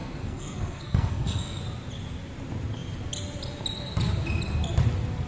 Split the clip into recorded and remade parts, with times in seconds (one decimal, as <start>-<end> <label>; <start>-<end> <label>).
0.0-1.6 remade; 1.6-5.3 recorded